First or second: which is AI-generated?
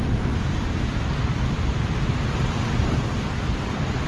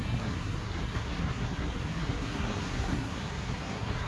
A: second